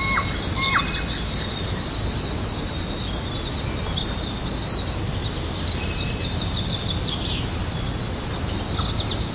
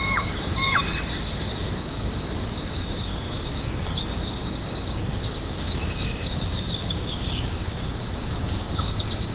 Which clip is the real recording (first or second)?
first